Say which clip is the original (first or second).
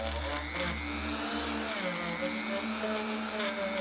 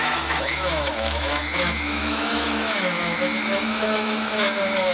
first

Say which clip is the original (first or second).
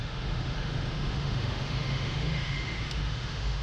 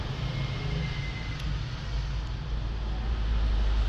second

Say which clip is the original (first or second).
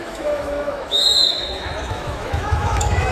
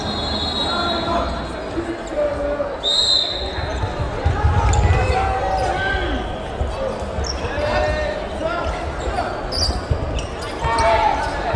second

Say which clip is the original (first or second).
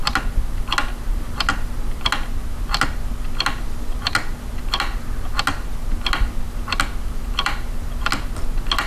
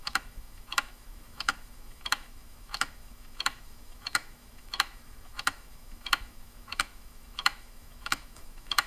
first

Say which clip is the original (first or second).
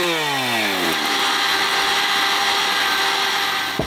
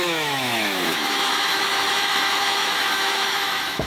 first